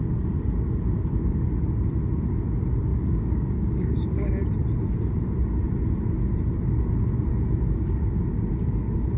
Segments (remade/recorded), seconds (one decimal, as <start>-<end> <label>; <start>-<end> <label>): 0.0-2.9 recorded; 2.9-4.3 remade; 4.3-7.3 recorded; 7.3-8.2 remade; 8.2-9.2 recorded

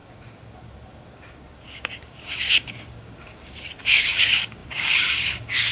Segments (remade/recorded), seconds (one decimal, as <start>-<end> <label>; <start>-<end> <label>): 0.0-5.7 remade

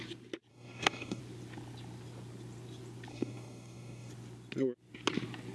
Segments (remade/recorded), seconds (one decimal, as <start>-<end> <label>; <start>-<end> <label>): 0.0-0.5 recorded; 0.5-1.2 remade; 1.2-3.1 recorded; 3.1-4.1 remade; 4.1-5.5 recorded

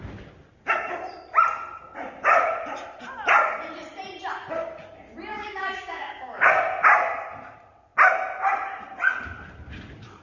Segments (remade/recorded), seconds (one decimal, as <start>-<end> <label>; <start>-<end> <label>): 0.0-5.3 recorded; 5.3-6.5 remade; 6.5-10.2 recorded

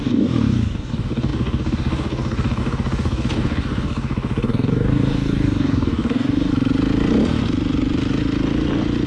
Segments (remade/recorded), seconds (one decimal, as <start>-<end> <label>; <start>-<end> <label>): 0.0-6.5 remade; 6.5-9.1 recorded

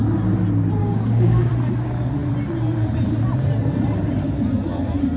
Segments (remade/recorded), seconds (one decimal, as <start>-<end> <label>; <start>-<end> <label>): 0.0-0.8 recorded; 0.8-1.5 remade; 1.5-5.2 recorded